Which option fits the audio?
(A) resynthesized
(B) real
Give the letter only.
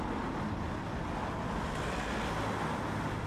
B